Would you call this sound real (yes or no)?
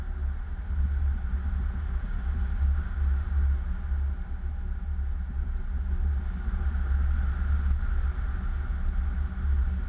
yes